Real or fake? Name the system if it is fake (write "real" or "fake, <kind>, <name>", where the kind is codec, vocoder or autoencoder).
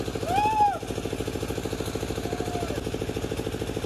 real